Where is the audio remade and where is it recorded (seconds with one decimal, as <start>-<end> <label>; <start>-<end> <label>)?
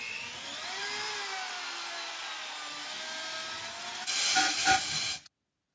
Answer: 0.0-5.7 recorded